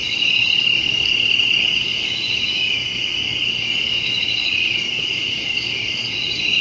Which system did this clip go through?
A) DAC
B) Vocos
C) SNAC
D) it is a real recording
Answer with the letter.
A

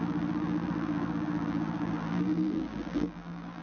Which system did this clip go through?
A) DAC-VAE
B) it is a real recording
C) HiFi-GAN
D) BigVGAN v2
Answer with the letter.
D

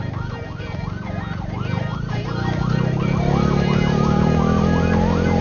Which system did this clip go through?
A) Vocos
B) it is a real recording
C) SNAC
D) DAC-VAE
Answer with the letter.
B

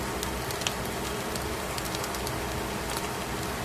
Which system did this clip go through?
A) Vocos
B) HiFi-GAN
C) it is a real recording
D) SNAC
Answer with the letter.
C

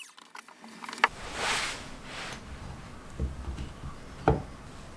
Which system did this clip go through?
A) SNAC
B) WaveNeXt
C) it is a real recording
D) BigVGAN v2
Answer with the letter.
C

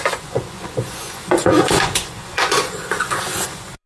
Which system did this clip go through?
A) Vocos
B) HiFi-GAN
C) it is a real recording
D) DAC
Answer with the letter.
A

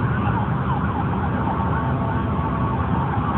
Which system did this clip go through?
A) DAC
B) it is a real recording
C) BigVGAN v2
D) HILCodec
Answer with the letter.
B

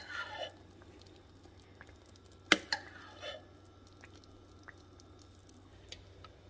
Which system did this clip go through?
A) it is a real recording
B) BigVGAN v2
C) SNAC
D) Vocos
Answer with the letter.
A